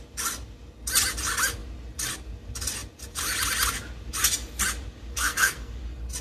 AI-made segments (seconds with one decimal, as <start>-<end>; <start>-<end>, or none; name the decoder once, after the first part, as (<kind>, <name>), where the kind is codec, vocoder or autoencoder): 5.1-5.7 (codec, SNAC)